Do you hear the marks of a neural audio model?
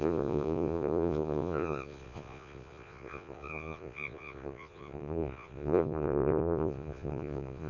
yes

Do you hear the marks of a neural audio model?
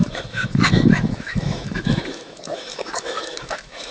yes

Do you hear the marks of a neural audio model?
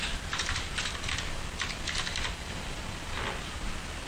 no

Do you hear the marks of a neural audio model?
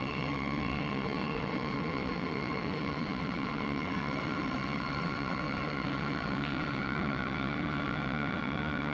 yes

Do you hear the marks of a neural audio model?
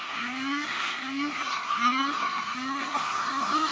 yes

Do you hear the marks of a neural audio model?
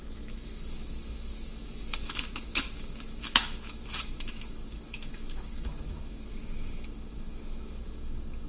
yes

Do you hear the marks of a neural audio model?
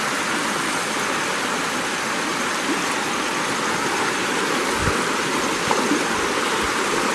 no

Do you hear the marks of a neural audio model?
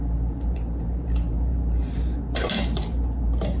yes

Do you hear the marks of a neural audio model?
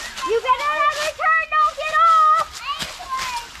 no